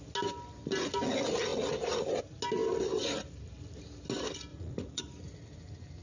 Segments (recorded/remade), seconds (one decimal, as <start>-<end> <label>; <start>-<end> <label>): 0.0-4.5 recorded; 4.5-5.0 remade; 5.0-6.0 recorded